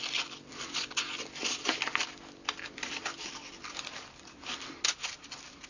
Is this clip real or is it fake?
real